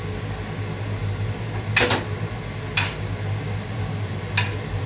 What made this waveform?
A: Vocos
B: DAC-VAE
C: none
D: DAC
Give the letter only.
C